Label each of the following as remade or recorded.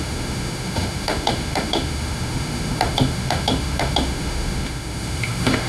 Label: remade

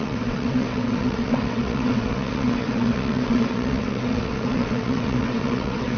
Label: remade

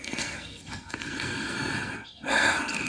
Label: remade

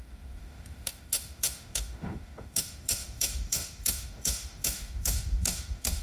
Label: remade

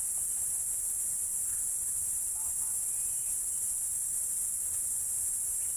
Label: recorded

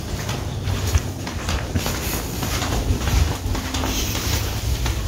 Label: recorded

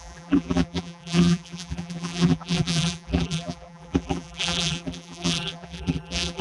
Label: remade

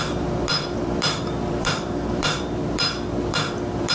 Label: remade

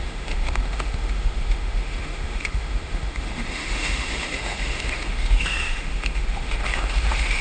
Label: remade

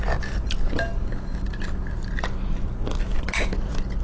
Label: recorded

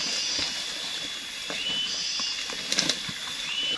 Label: recorded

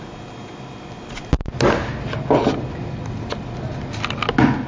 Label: recorded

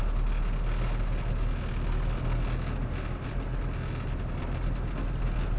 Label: recorded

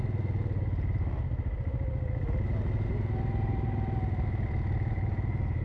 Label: recorded